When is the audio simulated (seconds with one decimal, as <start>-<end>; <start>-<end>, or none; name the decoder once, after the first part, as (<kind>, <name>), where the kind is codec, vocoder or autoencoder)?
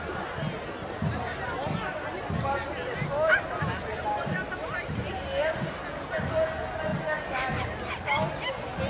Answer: none